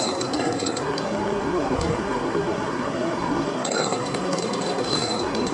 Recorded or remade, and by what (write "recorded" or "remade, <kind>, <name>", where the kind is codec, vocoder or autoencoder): remade, codec, SNAC